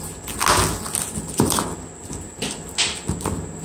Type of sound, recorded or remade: recorded